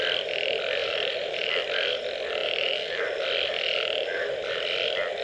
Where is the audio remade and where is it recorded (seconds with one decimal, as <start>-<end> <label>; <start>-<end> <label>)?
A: 0.0-0.8 recorded; 0.8-1.4 remade; 1.4-2.4 recorded; 2.4-3.0 remade; 3.0-5.2 recorded